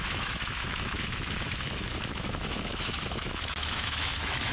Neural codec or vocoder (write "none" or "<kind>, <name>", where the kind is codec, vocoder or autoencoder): autoencoder, DAC-VAE